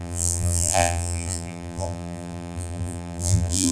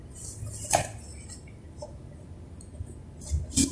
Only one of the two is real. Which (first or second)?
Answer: second